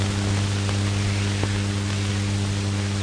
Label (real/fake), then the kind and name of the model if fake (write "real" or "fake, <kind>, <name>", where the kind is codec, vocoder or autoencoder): real